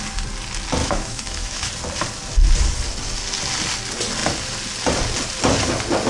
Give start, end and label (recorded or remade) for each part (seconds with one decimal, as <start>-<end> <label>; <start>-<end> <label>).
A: 0.0-0.8 recorded; 0.8-1.7 remade; 1.7-6.1 recorded